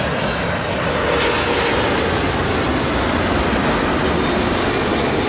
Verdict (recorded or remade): recorded